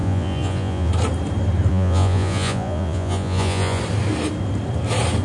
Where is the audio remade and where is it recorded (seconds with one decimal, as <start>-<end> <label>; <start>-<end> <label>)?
0.0-0.9 remade; 0.9-1.7 recorded; 1.7-3.8 remade; 3.8-5.2 recorded